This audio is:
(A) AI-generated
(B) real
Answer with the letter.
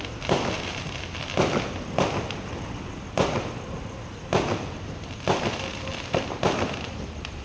B